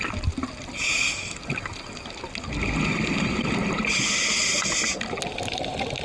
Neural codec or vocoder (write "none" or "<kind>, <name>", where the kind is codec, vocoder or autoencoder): none